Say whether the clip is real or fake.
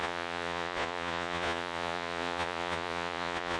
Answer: fake